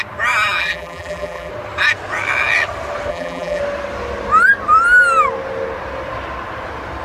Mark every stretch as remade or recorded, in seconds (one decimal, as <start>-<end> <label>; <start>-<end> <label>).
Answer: 0.0-0.6 recorded; 0.6-1.5 remade; 1.5-3.1 recorded; 3.1-3.6 remade; 3.6-7.0 recorded